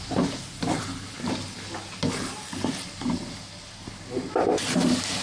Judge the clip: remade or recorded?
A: recorded